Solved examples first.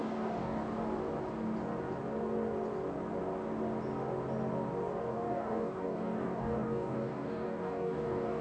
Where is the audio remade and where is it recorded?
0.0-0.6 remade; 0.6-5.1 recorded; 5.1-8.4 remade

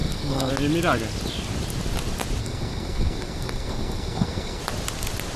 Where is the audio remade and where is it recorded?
0.0-0.5 remade; 0.5-2.4 recorded; 2.4-4.6 remade; 4.6-5.4 recorded

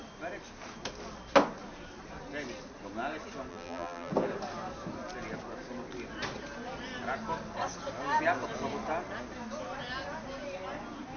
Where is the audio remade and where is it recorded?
0.0-3.5 recorded; 3.5-4.1 remade; 4.1-11.2 recorded

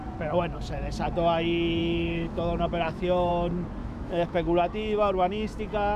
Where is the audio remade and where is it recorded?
0.0-1.8 recorded; 1.8-3.3 remade; 3.3-3.8 recorded; 3.8-5.6 remade; 5.6-6.0 recorded

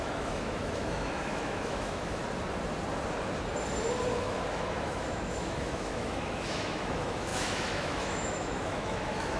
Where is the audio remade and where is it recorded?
0.0-2.2 remade; 2.2-4.1 recorded; 4.1-9.4 remade

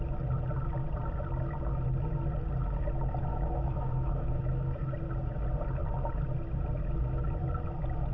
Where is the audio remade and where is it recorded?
0.0-3.3 recorded; 3.3-4.8 remade; 4.8-8.1 recorded

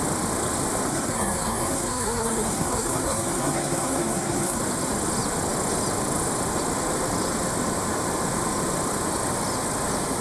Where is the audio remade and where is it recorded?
0.0-0.9 recorded; 0.9-4.6 remade; 4.6-10.2 recorded